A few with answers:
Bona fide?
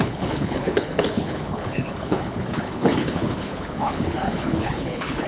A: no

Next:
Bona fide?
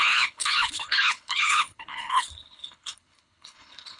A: no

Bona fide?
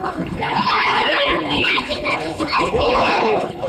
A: no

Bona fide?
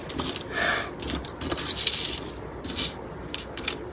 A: yes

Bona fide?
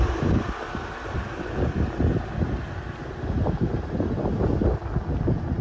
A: yes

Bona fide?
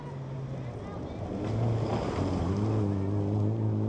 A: yes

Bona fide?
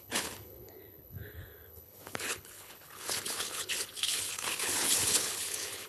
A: no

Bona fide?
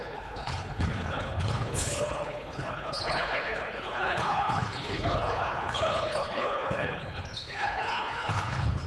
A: no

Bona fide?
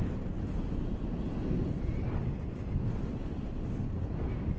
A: yes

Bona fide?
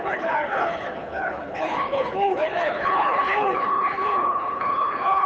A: no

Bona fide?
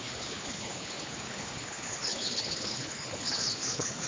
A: no